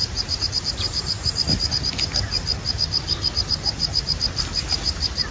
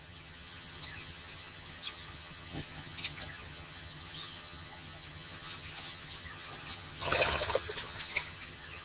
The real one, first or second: first